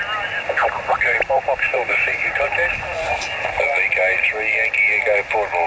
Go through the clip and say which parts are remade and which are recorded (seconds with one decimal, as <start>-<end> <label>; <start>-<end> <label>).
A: 0.0-1.7 recorded; 1.7-3.1 remade; 3.1-5.7 recorded